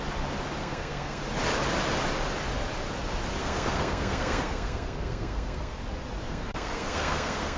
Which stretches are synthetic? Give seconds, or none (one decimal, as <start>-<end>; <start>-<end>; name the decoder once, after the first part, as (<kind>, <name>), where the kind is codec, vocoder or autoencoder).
0.6-1.2 (codec, SNAC); 3.4-5.8; 6.3-7.6

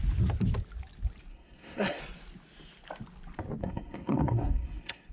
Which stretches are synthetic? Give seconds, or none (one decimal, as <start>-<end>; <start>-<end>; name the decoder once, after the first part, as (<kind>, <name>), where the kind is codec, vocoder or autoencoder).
1.3-2.0 (codec, SNAC); 3.6-5.1

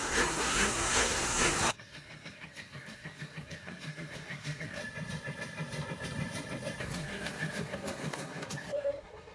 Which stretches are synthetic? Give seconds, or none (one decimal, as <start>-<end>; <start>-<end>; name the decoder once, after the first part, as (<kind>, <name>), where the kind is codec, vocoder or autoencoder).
0.0-4.8 (codec, SNAC); 6.8-9.3